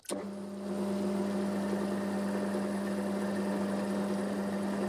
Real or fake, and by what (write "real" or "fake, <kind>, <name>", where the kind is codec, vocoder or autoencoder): real